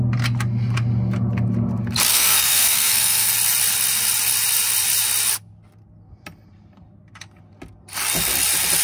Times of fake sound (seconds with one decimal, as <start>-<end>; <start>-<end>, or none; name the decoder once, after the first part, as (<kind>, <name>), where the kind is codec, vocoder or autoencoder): 2.1-3.3 (codec, SNAC)